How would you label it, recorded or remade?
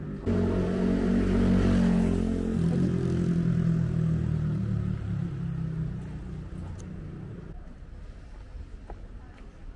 recorded